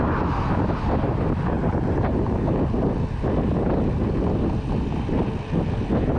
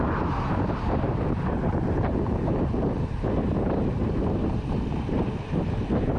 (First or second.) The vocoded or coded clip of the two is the second